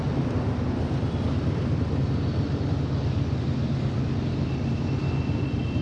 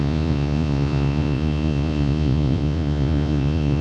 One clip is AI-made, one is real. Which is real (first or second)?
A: first